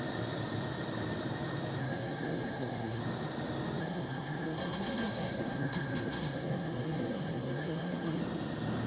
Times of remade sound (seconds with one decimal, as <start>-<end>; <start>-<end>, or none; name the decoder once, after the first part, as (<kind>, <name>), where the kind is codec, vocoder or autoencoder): 1.8-3.0 (codec, SNAC); 3.8-8.2